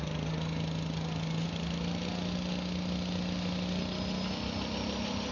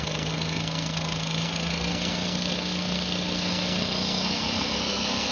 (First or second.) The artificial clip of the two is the second